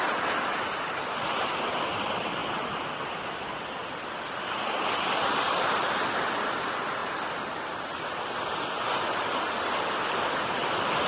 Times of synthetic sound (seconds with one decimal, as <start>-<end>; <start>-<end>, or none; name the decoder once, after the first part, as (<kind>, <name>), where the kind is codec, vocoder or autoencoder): none